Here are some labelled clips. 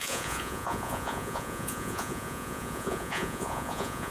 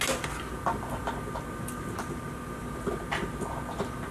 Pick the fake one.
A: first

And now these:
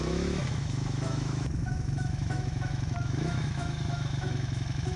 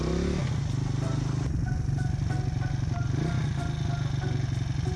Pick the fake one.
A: first